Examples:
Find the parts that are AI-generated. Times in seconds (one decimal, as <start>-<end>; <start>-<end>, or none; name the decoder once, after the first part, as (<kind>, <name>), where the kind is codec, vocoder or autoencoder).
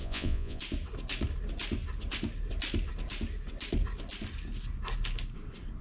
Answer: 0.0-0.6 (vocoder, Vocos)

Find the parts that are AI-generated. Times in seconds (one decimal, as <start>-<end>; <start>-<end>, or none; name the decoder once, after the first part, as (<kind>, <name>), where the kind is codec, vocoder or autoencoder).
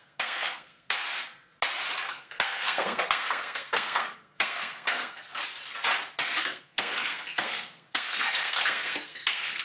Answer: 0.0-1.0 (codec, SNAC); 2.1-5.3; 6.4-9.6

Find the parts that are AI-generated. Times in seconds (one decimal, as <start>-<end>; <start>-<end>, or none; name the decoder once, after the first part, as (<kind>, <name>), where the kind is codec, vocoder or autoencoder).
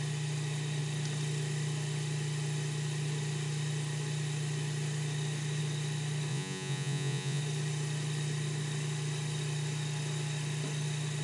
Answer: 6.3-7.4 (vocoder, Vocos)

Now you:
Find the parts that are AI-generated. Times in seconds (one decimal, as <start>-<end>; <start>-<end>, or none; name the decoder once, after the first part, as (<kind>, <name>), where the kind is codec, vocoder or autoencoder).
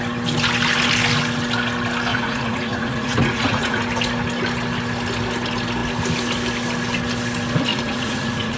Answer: 2.1-3.8 (vocoder, Vocos); 7.7-8.6